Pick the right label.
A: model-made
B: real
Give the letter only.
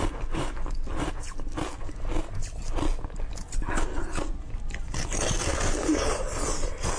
B